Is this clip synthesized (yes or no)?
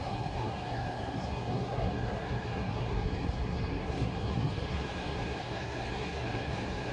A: yes